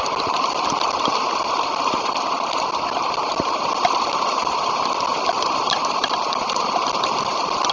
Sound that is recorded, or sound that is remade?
remade